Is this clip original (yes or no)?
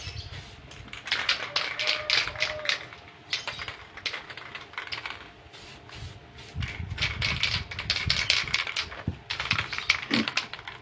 yes